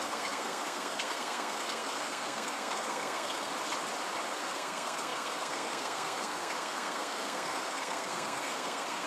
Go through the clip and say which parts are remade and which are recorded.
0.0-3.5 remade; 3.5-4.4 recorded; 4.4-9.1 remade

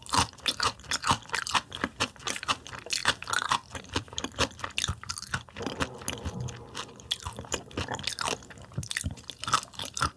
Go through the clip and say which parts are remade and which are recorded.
0.0-10.2 recorded

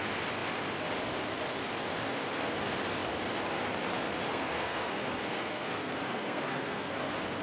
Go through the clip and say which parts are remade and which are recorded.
0.0-4.3 recorded; 4.3-6.9 remade; 6.9-7.4 recorded

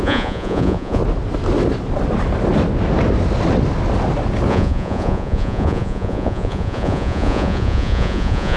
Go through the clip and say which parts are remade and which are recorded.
0.0-1.0 remade; 1.0-4.5 recorded; 4.5-8.6 remade

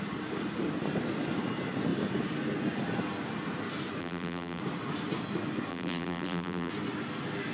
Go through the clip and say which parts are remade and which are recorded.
0.0-4.0 recorded; 4.0-4.6 remade; 4.6-5.7 recorded; 5.7-6.7 remade; 6.7-7.5 recorded